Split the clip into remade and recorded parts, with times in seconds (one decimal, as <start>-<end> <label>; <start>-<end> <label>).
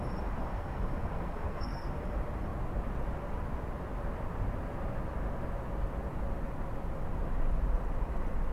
0.0-0.4 recorded; 0.4-1.9 remade; 1.9-8.5 recorded